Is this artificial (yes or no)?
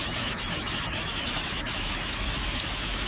yes